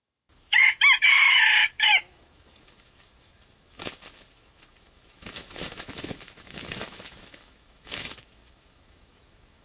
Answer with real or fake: fake